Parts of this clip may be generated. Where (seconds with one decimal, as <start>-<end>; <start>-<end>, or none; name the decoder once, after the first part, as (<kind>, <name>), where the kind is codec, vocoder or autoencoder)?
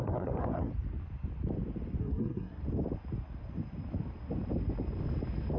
0.0-0.7 (codec, SNAC); 2.0-2.6